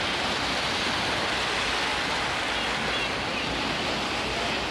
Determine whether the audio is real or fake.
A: real